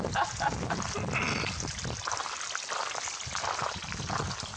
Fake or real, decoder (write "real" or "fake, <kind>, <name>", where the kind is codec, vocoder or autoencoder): real